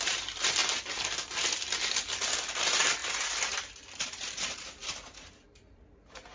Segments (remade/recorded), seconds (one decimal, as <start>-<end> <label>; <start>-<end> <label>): 0.0-0.6 remade; 0.6-2.3 recorded; 2.3-6.3 remade